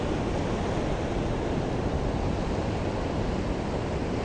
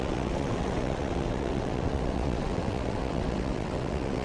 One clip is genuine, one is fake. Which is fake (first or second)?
second